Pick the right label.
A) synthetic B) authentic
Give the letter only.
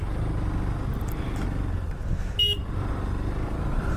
B